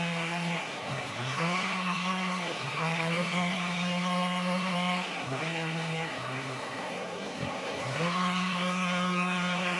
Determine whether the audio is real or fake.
fake